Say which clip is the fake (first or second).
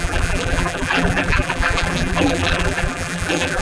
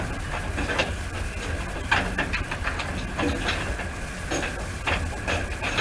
first